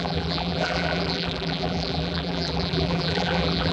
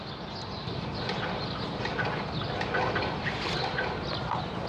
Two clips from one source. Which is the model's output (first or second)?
first